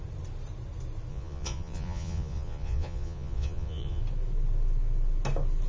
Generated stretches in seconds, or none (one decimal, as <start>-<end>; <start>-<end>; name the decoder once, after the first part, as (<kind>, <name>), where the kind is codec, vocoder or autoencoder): 1.1-4.0 (vocoder, Vocos)